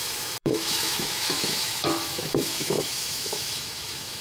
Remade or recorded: remade